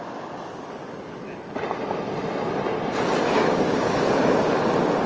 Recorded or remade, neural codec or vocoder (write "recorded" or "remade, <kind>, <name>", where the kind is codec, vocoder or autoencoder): recorded